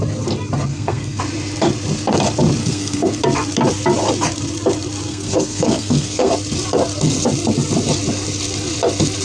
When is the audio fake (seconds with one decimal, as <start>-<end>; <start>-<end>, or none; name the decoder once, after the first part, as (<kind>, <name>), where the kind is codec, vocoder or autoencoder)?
0.7-1.2 (codec, SNAC); 2.6-3.2; 5.1-6.3